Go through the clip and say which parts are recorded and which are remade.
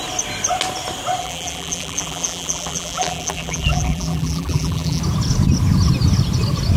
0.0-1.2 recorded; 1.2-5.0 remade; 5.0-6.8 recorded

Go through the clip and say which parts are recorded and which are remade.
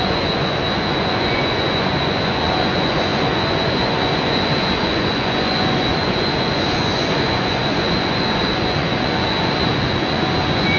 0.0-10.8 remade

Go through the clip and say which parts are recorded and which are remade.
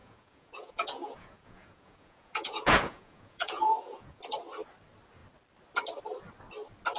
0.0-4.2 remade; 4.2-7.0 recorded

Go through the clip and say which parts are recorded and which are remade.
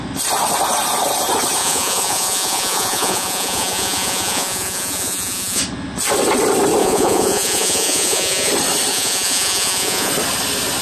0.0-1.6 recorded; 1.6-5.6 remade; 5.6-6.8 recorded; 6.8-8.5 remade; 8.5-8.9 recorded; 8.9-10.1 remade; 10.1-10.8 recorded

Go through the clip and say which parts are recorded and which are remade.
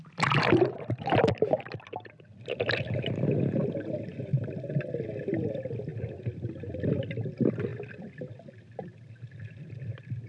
0.0-10.3 recorded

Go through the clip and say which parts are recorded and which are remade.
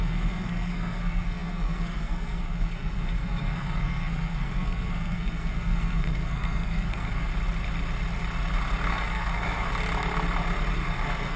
0.0-7.3 remade; 7.3-8.9 recorded; 8.9-9.7 remade; 9.7-10.7 recorded; 10.7-11.4 remade